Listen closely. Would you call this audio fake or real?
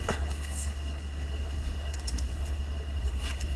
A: fake